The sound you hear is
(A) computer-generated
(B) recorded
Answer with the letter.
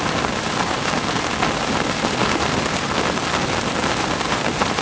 B